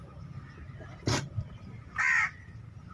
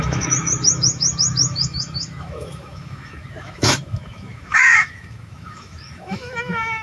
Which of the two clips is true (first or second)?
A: first